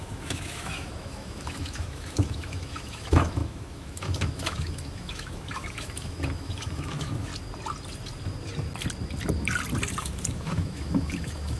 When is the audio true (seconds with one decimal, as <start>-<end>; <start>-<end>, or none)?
7.3-10.0